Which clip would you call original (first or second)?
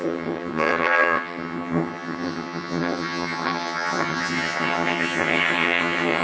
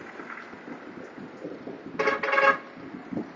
second